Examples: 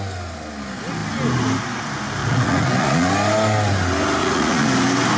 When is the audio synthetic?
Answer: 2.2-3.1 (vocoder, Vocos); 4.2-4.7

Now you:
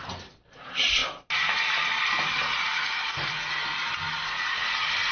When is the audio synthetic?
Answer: none

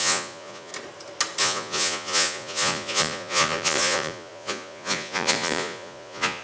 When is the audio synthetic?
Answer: 0.0-0.7 (vocoder, Vocos); 1.4-6.4

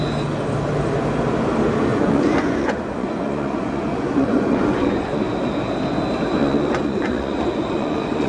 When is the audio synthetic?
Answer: 1.9-5.2 (vocoder, Vocos); 6.4-8.3